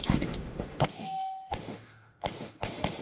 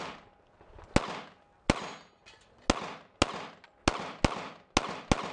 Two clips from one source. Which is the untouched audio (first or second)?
second